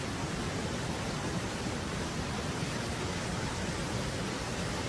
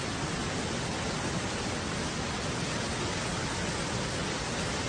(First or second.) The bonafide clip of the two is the second